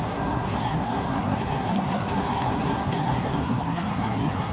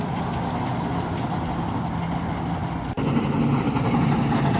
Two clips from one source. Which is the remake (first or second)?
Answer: first